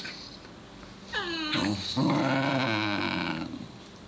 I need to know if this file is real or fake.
real